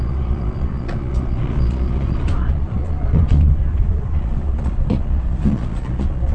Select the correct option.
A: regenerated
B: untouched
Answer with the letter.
A